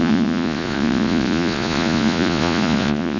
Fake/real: fake